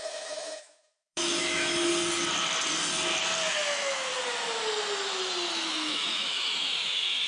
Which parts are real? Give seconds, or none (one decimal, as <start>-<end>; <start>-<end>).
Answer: 1.9-3.5; 4.1-5.5